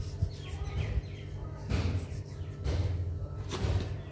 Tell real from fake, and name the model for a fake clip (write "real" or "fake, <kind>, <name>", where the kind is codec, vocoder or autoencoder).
real